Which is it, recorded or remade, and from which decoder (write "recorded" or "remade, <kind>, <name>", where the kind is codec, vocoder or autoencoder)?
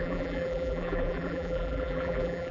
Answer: remade, vocoder, BigVGAN v2